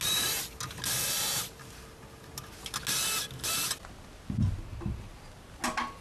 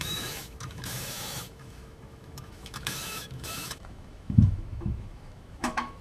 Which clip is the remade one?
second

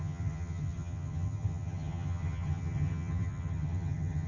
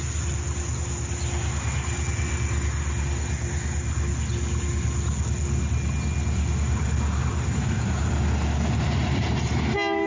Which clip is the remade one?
first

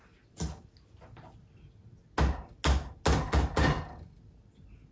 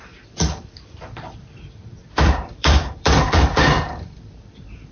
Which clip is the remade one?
second